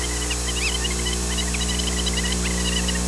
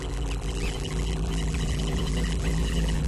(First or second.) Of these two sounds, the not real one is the second